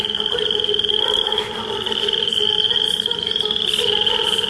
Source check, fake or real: real